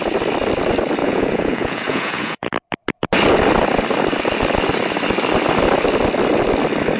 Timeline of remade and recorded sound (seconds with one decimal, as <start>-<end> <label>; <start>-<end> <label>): 0.0-1.0 recorded; 1.0-2.5 remade; 2.5-7.0 recorded